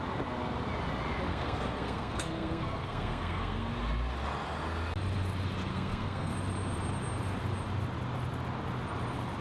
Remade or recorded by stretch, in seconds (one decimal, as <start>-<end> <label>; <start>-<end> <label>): 0.0-1.3 recorded; 1.3-3.7 remade; 3.7-5.7 recorded; 5.7-6.3 remade; 6.3-9.4 recorded